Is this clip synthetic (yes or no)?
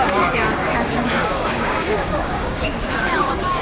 yes